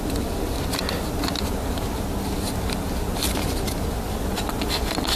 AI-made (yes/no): no